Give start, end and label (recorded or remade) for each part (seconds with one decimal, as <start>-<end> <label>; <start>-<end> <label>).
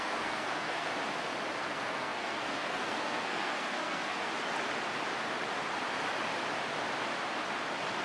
0.0-0.9 remade; 0.9-1.6 recorded; 1.6-4.3 remade; 4.3-8.0 recorded